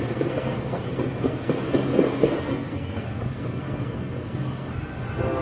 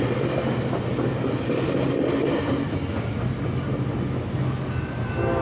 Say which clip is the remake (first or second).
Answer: first